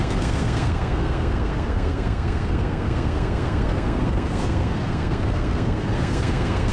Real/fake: fake